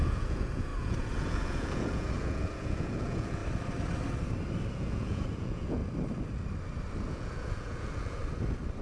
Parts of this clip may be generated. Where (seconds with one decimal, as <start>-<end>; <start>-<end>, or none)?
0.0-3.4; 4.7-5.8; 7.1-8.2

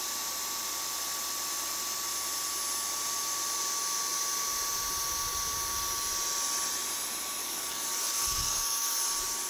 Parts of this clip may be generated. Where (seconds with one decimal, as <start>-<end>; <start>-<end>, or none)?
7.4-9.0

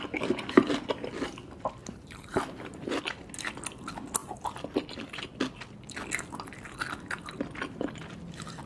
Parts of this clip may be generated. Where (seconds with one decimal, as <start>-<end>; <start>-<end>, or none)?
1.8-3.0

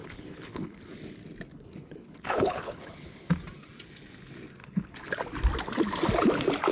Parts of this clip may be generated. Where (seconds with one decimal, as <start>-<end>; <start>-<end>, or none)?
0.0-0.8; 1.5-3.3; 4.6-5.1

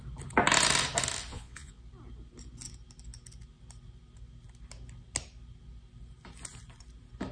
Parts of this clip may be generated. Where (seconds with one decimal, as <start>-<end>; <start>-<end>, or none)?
1.3-1.8